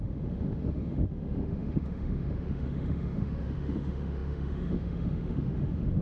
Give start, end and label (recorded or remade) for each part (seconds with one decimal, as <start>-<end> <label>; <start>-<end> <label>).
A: 0.0-6.0 remade

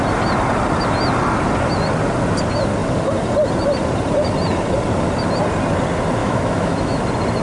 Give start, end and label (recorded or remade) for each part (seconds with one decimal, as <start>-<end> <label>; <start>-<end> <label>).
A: 0.0-6.2 recorded; 6.2-7.0 remade; 7.0-7.4 recorded